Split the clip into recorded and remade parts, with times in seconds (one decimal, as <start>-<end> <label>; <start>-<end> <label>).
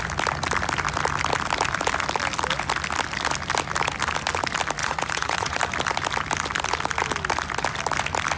0.0-4.8 recorded; 4.8-5.6 remade; 5.6-8.4 recorded